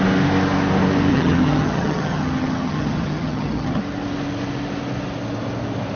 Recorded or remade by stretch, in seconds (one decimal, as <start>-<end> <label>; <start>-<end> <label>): 0.0-1.1 recorded; 1.1-3.8 remade; 3.8-6.0 recorded